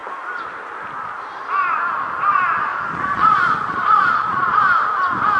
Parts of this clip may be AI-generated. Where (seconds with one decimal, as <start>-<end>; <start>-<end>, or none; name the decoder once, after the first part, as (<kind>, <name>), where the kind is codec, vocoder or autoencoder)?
2.7-4.6 (vocoder, Vocos)